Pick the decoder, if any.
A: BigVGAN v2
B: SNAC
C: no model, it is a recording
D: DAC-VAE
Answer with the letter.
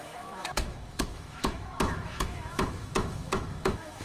D